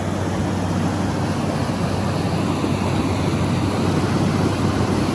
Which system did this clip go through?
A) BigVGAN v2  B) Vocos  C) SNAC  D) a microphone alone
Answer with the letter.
D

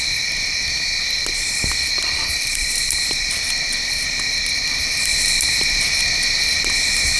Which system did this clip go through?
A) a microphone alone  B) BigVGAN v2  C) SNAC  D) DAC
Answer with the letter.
A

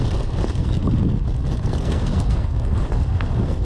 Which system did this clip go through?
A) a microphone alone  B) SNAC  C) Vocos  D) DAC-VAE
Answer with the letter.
B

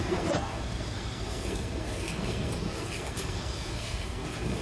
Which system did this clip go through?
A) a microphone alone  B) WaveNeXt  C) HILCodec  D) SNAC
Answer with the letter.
D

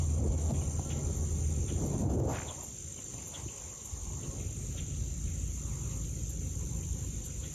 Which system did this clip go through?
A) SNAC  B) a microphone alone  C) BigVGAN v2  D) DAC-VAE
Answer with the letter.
B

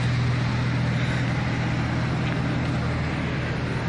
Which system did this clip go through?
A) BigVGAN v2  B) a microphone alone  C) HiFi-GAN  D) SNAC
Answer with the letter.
B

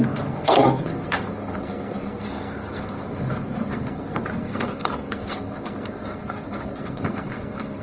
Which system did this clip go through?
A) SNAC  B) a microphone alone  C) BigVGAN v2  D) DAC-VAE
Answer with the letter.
A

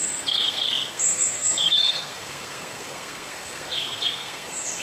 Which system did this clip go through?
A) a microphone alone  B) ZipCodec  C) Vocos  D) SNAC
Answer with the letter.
D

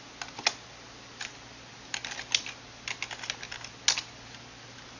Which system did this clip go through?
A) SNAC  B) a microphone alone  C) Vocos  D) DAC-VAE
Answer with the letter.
B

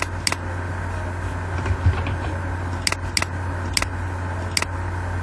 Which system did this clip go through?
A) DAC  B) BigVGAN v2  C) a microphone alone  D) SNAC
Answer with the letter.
C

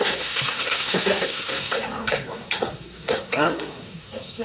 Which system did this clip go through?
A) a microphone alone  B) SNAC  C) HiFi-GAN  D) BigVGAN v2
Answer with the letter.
B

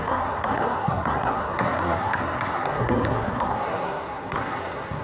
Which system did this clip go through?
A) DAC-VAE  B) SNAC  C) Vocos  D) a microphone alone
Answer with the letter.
B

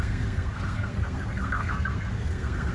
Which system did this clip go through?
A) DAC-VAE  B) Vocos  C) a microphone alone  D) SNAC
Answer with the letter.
D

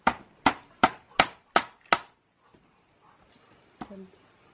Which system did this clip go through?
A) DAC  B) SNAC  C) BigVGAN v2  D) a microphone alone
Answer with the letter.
D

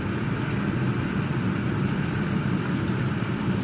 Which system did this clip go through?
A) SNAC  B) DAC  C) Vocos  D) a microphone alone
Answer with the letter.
D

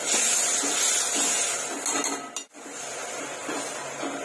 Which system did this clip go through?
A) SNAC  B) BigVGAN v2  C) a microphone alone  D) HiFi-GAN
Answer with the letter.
C